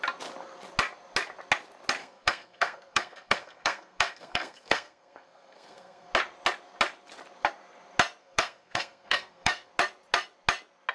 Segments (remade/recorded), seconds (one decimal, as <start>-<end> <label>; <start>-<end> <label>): 0.0-2.0 recorded; 2.0-6.1 remade; 6.1-8.2 recorded; 8.2-9.7 remade; 9.7-10.9 recorded